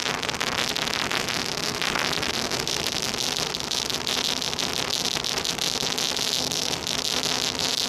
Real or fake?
real